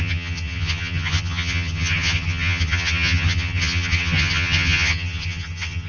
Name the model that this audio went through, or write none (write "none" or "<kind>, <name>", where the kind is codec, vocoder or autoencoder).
vocoder, HiFi-GAN